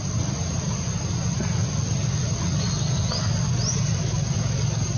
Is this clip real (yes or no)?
yes